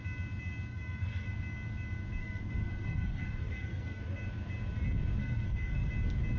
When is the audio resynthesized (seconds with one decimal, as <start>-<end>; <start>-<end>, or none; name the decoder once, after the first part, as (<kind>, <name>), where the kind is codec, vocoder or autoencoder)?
0.7-1.3 (codec, SNAC); 2.2-4.0; 5.2-5.9